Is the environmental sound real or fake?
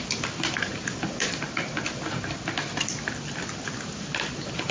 real